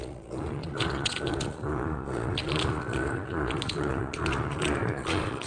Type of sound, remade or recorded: remade